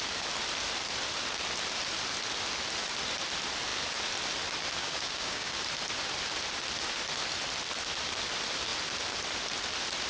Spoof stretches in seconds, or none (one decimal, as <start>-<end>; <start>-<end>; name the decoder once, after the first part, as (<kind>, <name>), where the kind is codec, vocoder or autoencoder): 4.8-5.5 (codec, DAC)